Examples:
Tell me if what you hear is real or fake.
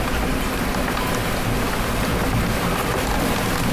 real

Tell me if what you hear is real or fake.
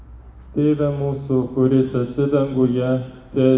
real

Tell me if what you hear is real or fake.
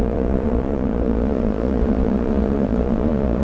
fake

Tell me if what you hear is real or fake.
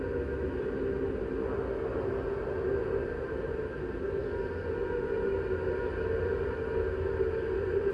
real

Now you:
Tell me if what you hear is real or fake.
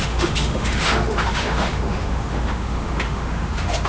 fake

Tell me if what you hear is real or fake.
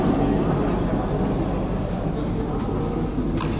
real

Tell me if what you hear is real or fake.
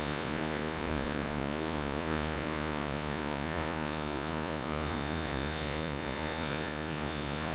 fake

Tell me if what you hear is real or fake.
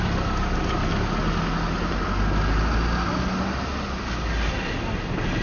real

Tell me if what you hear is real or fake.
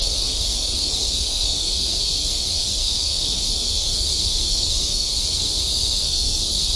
fake